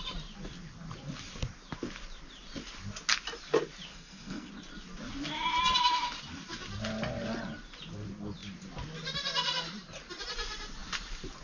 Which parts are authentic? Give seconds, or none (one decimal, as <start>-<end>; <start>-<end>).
0.0-3.9; 4.5-11.4